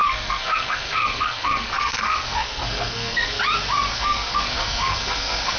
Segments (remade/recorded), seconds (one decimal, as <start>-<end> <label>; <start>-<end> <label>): 0.0-3.4 remade; 3.4-3.9 recorded; 3.9-5.6 remade